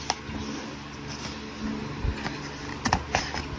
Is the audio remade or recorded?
recorded